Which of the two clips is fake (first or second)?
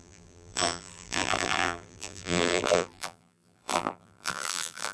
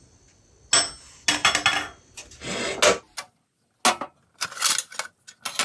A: first